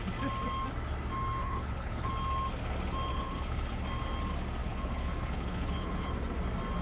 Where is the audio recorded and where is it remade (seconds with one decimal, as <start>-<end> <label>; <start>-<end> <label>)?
0.0-1.4 recorded; 1.4-2.1 remade; 2.1-3.1 recorded; 3.1-3.8 remade; 3.8-4.6 recorded; 4.6-6.1 remade; 6.1-6.8 recorded